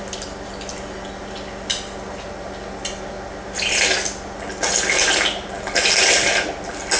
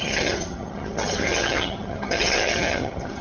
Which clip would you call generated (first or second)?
second